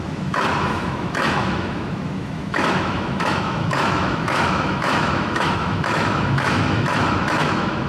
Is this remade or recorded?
remade